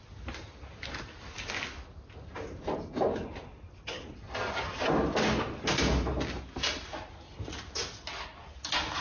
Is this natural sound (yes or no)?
yes